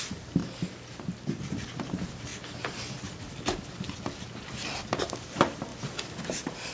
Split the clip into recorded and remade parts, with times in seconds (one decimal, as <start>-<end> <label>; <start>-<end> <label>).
0.0-0.4 remade; 0.4-1.4 recorded; 1.4-2.3 remade; 2.3-5.0 recorded; 5.0-5.7 remade; 5.7-6.2 recorded; 6.2-6.7 remade